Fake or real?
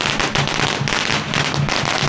real